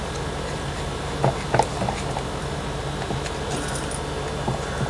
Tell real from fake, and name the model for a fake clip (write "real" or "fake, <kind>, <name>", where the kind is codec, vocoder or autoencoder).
real